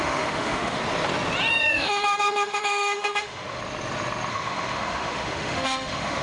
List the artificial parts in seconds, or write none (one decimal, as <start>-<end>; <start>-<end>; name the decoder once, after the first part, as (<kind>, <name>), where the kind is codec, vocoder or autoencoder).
0.0-0.8 (autoencoder, DAC-VAE); 1.6-3.6; 4.3-6.2